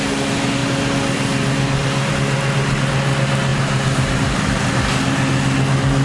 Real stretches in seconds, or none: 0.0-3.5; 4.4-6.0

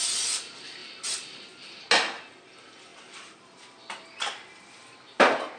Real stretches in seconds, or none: 0.0-0.8; 1.8-2.9; 4.7-5.6

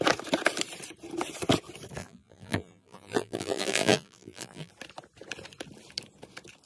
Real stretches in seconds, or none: 0.0-2.0; 4.7-6.7

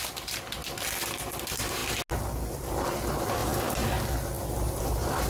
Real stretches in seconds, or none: 0.6-1.4; 1.8-2.5; 3.4-4.4

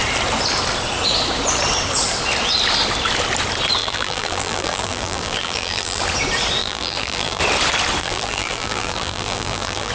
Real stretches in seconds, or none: 0.0-3.8; 6.0-6.6; 7.4-8.0

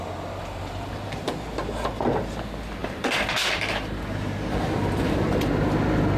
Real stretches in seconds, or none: 0.0-0.4; 1.2-2.8; 4.0-6.2